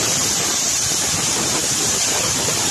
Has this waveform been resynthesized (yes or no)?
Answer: yes